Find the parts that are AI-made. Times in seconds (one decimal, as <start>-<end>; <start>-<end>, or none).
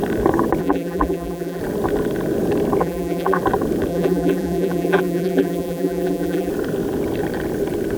0.6-1.6; 2.8-3.4; 3.9-6.5